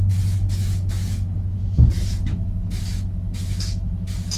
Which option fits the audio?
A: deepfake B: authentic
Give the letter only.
A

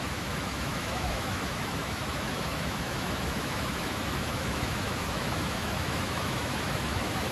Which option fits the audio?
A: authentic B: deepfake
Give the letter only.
B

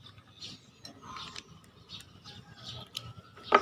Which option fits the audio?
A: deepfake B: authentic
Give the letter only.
B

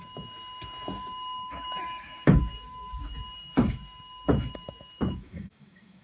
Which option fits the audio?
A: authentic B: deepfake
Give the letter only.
B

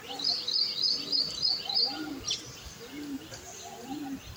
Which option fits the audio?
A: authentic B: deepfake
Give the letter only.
A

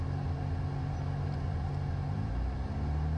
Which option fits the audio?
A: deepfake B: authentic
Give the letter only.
B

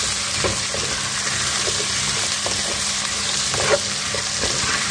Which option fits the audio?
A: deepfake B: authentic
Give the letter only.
B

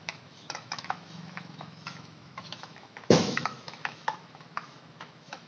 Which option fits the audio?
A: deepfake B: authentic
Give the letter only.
A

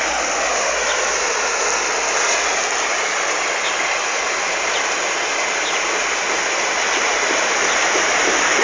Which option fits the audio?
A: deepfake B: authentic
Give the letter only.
B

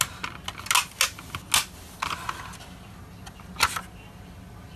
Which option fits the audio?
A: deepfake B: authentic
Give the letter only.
B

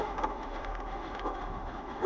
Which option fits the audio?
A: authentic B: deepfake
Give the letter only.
B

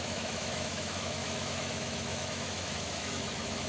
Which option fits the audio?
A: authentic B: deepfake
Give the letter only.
B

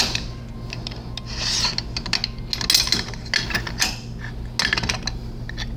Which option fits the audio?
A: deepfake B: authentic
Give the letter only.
B